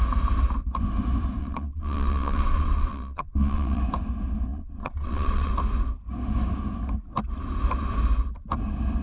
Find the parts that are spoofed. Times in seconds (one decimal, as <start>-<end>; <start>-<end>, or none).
1.4-3.8; 4.5-5.5